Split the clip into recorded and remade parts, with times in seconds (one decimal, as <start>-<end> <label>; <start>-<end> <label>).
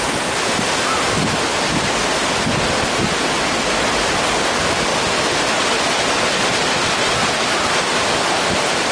0.0-8.9 recorded